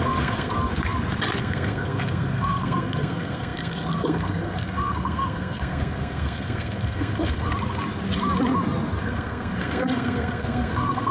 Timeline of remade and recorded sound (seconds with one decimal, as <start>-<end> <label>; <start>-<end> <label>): 0.0-0.8 remade; 0.8-1.4 recorded; 1.4-7.5 remade; 7.5-9.0 recorded; 9.0-11.1 remade